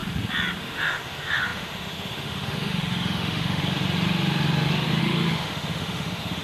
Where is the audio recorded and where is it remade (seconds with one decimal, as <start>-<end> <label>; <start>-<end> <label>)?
0.0-0.6 recorded; 0.6-3.6 remade; 3.6-5.0 recorded; 5.0-6.4 remade